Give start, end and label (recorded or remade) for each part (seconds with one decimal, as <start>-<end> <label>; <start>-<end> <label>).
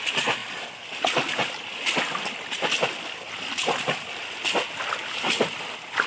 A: 0.0-6.1 recorded